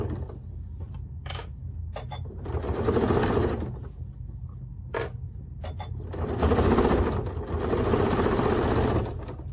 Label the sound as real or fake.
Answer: real